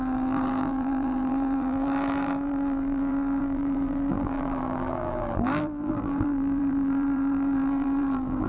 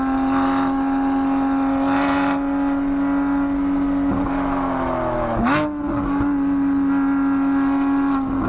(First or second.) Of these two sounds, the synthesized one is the first